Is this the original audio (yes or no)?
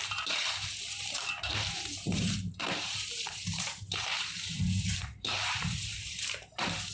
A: no